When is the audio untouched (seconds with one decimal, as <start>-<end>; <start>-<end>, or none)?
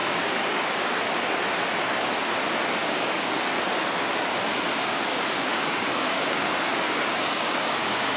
0.9-2.8; 3.5-4.8